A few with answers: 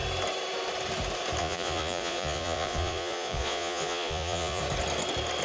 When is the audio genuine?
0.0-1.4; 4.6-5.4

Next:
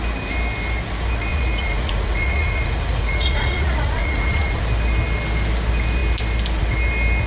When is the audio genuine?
0.0-1.3; 4.6-7.3

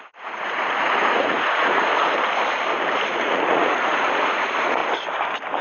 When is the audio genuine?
1.9-3.1; 4.8-5.6

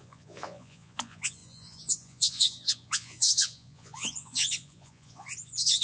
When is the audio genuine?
none

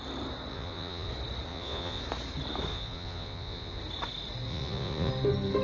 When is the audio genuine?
0.0-0.5; 1.1-1.5; 2.0-2.7; 3.8-4.5; 5.1-5.6

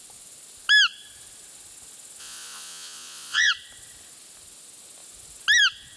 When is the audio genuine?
0.0-2.2; 3.5-6.0

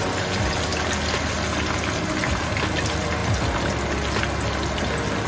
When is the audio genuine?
0.0-5.3